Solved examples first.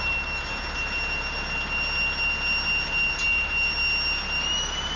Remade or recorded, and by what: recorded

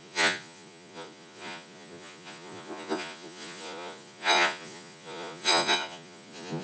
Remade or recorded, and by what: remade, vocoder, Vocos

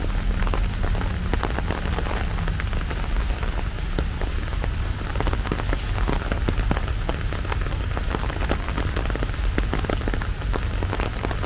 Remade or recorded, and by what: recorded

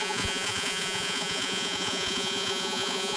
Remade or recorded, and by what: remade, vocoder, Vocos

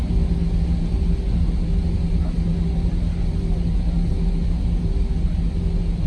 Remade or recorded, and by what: recorded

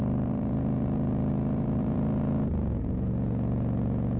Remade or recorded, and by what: remade, vocoder, Vocos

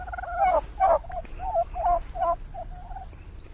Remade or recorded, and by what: recorded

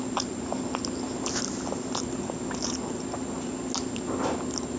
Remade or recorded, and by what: recorded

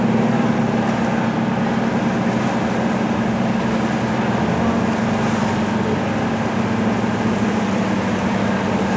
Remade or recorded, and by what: recorded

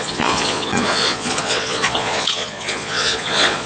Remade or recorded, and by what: remade, vocoder, Vocos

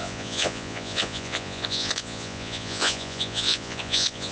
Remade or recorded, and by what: remade, vocoder, Vocos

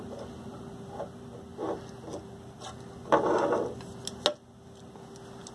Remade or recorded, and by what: recorded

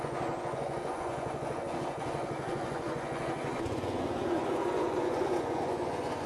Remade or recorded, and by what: remade, vocoder, Vocos